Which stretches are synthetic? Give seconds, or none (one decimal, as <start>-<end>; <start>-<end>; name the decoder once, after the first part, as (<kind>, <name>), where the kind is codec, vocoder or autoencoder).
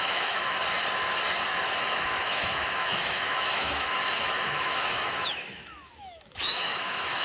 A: 0.0-0.6 (autoencoder, DAC-VAE); 1.8-7.2